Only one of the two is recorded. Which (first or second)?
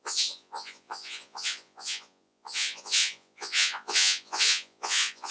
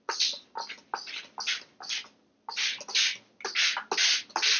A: second